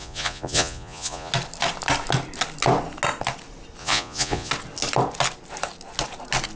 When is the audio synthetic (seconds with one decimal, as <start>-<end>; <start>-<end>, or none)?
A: 0.0-1.3; 3.8-4.5